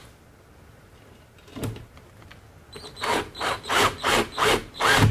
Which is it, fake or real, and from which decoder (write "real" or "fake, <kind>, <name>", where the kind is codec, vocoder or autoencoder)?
real